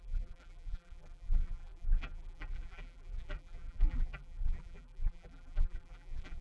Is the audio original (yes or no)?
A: no